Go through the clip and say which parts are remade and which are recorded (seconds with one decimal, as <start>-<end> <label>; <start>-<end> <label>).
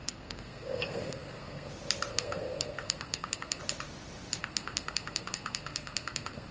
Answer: 0.0-1.7 remade; 1.7-2.1 recorded; 2.1-3.6 remade; 3.6-4.4 recorded; 4.4-6.5 remade